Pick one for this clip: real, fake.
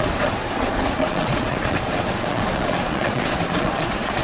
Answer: fake